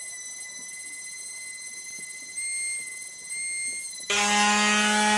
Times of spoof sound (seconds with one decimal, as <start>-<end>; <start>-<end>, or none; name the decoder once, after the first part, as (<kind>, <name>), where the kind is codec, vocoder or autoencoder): none